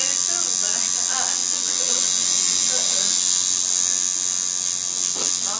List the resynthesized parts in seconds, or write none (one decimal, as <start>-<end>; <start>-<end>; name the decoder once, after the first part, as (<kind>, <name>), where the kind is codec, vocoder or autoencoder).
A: none